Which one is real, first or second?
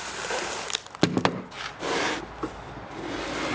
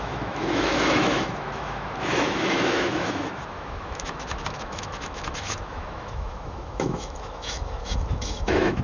first